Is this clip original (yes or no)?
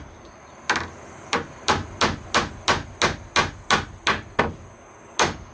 yes